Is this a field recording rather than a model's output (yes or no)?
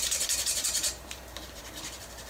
no